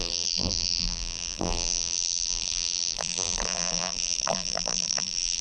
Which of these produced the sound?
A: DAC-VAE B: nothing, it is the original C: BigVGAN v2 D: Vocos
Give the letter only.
C